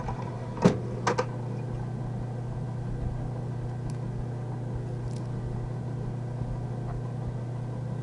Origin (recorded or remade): recorded